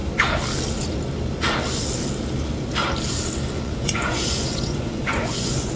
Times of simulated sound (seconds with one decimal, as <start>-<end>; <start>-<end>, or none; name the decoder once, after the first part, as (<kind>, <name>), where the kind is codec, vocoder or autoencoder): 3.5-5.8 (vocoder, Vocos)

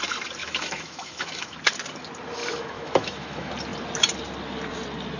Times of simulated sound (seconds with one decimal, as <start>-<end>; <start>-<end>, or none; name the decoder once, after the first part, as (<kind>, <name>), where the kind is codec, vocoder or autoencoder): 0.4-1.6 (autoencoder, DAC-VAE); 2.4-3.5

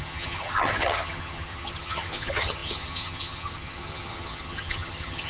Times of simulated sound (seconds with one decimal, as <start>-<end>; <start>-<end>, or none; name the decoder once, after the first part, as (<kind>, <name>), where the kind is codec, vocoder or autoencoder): 0.0-5.3 (vocoder, HiFi-GAN)